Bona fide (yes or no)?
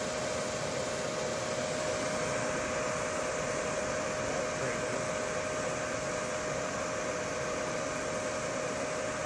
yes